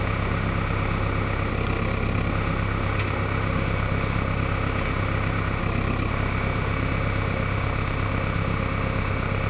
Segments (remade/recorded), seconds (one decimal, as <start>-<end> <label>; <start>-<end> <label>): 0.0-1.5 remade; 1.5-2.3 recorded; 2.3-5.6 remade; 5.6-6.1 recorded; 6.1-9.5 remade